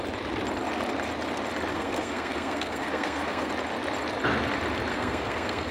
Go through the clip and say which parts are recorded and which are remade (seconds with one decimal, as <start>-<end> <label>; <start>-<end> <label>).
0.0-1.7 recorded; 1.7-3.5 remade; 3.5-4.9 recorded; 4.9-5.7 remade